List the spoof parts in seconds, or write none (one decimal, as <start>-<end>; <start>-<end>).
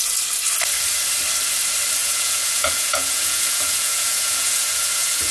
2.0-5.3